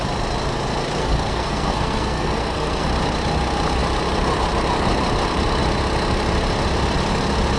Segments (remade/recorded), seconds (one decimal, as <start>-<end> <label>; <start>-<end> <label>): 0.0-1.0 recorded; 1.0-2.9 remade; 2.9-7.6 recorded